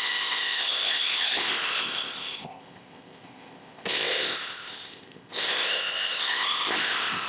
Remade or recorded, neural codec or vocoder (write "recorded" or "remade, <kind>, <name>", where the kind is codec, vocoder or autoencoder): remade, codec, ZipCodec